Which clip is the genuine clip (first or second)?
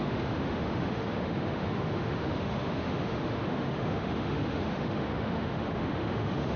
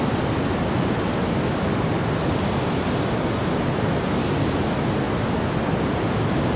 second